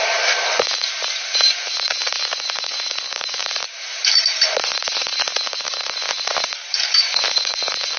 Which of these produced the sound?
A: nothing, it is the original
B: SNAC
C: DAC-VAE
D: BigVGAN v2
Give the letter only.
D